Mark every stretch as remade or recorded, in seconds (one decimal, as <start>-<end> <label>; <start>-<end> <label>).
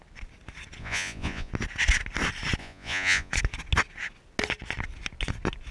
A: 0.0-0.8 recorded; 0.8-1.5 remade; 1.5-2.6 recorded; 2.6-3.3 remade; 3.3-5.7 recorded